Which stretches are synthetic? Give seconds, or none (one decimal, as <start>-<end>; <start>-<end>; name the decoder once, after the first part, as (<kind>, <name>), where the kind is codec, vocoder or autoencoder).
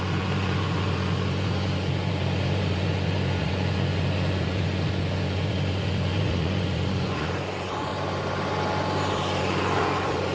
0.0-7.9 (vocoder, Vocos); 9.4-10.3